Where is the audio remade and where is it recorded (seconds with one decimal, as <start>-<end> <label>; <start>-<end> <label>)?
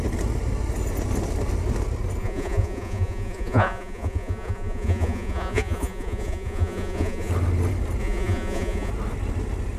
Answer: 0.0-2.2 recorded; 2.2-7.3 remade; 7.3-8.0 recorded; 8.0-8.9 remade; 8.9-9.8 recorded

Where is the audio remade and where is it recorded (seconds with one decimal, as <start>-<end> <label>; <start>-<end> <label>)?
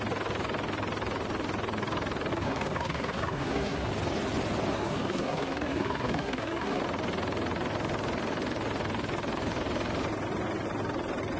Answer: 0.0-2.3 recorded; 2.3-3.9 remade; 3.9-4.7 recorded; 4.7-6.8 remade; 6.8-11.4 recorded